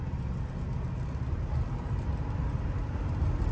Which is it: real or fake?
real